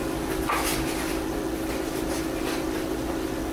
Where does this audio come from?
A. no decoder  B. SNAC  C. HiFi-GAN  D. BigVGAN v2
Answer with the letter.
A